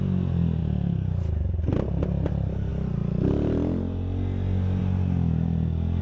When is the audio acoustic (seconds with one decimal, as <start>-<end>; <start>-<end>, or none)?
0.0-6.0